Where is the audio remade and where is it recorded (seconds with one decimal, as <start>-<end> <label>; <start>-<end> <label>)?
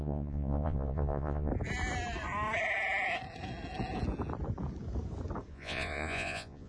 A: 0.0-1.5 remade; 1.5-5.5 recorded; 5.5-6.7 remade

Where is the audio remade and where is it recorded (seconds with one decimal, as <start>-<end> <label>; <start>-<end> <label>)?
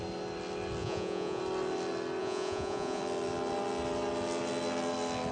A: 0.0-0.8 recorded; 0.8-1.4 remade; 1.4-2.2 recorded; 2.2-3.0 remade; 3.0-5.3 recorded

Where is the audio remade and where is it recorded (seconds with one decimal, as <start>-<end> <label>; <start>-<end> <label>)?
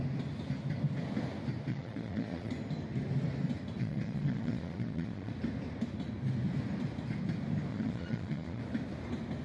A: 0.0-1.7 recorded; 1.7-2.5 remade; 2.5-3.8 recorded; 3.8-5.3 remade; 5.3-7.7 recorded; 7.7-8.6 remade; 8.6-9.4 recorded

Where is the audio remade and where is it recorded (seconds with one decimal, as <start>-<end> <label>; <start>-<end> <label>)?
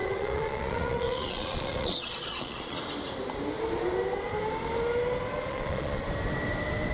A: 0.0-2.8 remade; 2.8-5.5 recorded; 5.5-6.0 remade; 6.0-6.9 recorded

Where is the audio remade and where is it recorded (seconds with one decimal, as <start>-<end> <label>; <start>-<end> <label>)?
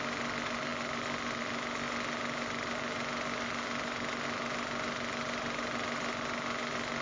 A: 0.0-7.0 recorded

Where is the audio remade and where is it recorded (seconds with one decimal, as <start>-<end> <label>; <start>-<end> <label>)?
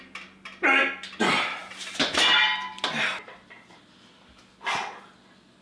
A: 0.0-5.6 recorded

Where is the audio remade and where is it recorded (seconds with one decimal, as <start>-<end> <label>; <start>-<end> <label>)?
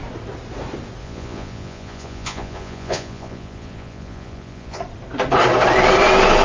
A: 0.0-1.0 recorded; 1.0-4.8 remade; 4.8-6.4 recorded